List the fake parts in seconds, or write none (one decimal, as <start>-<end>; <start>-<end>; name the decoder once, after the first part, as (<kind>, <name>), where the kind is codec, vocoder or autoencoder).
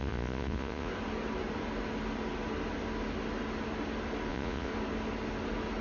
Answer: 0.0-0.9 (vocoder, Vocos); 4.3-4.7